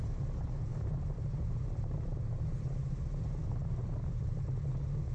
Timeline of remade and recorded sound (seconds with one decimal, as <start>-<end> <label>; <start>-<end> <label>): 0.0-0.7 recorded; 0.7-3.0 remade; 3.0-3.4 recorded; 3.4-4.6 remade; 4.6-5.1 recorded